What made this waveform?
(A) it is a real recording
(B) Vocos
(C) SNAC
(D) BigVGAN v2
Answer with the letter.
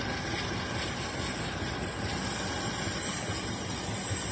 A